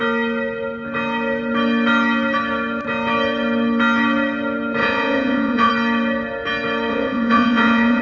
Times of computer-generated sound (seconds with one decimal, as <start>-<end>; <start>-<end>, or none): 4.8-5.7; 6.9-8.0